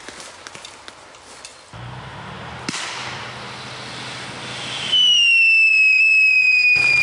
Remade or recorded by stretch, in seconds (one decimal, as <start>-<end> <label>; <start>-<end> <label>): 0.0-7.0 recorded